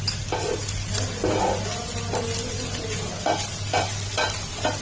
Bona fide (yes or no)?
yes